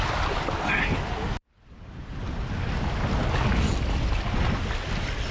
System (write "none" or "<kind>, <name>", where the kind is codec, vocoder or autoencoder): none